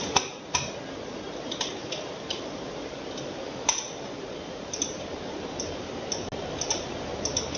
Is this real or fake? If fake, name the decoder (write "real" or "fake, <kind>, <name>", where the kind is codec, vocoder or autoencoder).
real